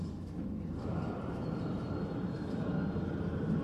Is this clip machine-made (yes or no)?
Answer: no